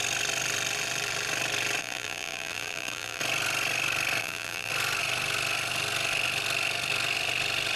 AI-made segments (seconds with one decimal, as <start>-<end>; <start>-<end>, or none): 1.8-3.2; 4.2-4.7